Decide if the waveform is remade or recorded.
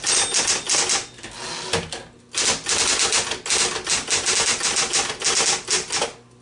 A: recorded